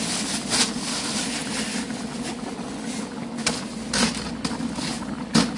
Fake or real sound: real